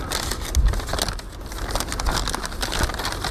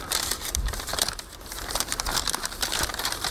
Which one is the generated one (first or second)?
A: second